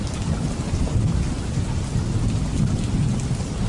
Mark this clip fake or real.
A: real